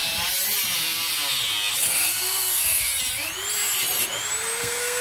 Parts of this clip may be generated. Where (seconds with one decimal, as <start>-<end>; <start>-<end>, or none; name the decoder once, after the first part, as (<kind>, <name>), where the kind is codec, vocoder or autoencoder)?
1.8-2.9 (codec, SNAC); 4.6-5.0